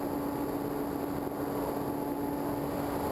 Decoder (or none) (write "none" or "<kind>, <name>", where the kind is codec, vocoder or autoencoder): none